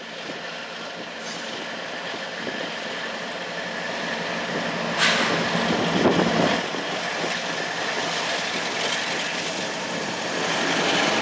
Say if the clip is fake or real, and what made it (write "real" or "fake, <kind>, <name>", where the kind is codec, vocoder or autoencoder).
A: real